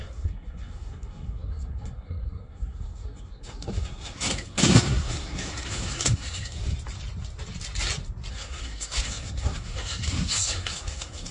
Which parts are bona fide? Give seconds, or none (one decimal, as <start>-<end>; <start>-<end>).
6.7-8.3